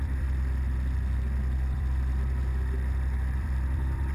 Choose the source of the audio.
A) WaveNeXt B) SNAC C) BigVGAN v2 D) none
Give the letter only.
C